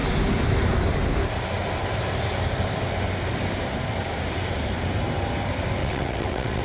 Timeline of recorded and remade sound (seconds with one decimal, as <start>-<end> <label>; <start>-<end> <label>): 0.0-5.8 recorded; 5.8-6.6 remade

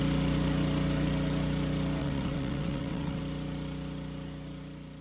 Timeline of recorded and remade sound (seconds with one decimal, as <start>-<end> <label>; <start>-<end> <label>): 0.0-2.0 recorded; 2.0-3.2 remade; 3.2-5.0 recorded

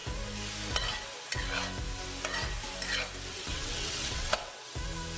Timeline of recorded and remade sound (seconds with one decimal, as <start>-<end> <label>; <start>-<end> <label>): 0.0-3.3 recorded; 3.3-4.7 remade; 4.7-5.2 recorded

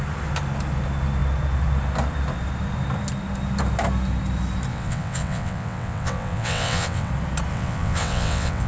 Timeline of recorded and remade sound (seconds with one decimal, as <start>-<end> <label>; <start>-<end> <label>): 0.0-4.7 recorded; 4.7-7.1 remade; 7.1-7.5 recorded; 7.5-8.7 remade